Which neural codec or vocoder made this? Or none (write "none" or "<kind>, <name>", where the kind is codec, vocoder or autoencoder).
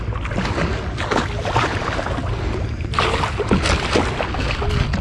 none